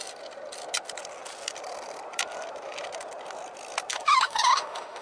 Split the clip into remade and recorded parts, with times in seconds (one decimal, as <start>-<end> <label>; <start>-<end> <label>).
0.0-3.9 recorded; 3.9-5.0 remade